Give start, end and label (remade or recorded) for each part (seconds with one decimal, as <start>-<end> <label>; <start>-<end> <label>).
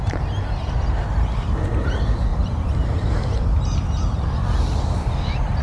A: 0.0-2.3 recorded; 2.3-3.1 remade; 3.1-5.6 recorded